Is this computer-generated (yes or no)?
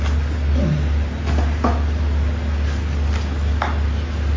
no